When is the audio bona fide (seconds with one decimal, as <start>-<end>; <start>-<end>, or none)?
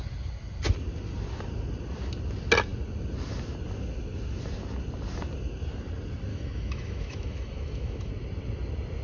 0.0-6.3; 8.1-9.0